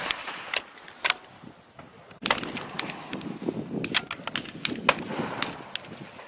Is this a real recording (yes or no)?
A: yes